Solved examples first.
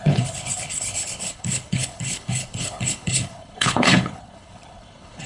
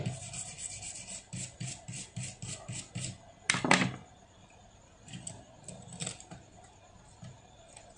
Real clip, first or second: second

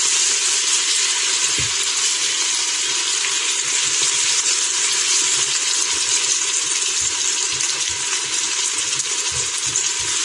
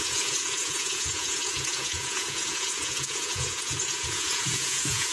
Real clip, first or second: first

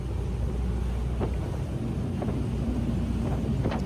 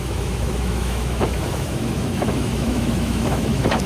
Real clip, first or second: first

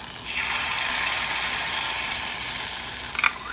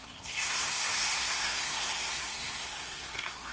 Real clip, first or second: first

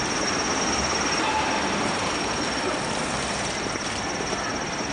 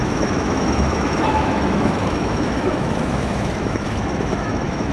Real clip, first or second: first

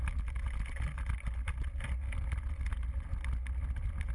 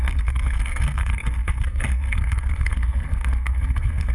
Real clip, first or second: first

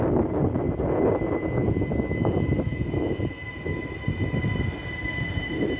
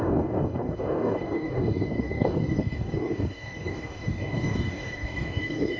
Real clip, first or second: first